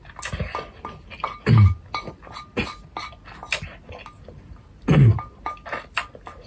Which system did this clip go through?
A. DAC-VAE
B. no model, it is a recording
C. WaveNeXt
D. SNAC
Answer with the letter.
B